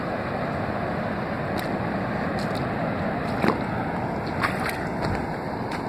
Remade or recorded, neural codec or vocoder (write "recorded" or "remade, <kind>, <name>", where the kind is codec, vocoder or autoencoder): recorded